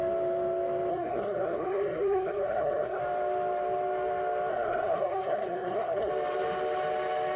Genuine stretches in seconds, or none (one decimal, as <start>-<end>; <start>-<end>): 0.0-0.9; 3.0-4.5; 6.1-7.4